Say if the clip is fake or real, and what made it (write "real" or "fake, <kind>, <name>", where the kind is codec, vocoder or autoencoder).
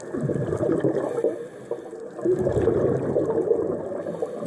real